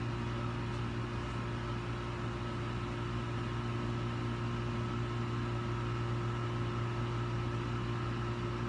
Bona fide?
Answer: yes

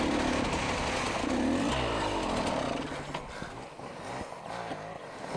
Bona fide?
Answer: yes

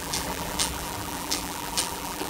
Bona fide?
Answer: no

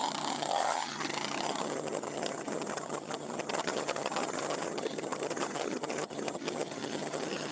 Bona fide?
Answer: no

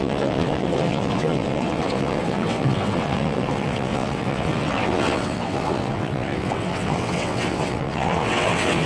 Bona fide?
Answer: no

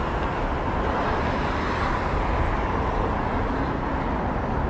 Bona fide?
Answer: yes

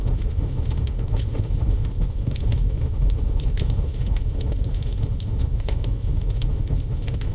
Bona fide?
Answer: no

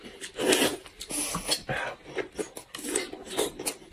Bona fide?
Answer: yes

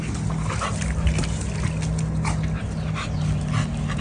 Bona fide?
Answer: yes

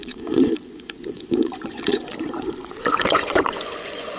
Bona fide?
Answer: no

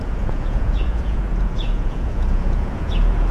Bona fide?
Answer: no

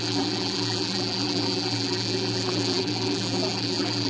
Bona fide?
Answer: no